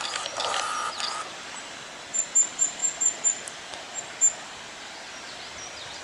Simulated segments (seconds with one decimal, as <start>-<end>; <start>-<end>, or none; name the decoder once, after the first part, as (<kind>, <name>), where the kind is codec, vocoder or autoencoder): none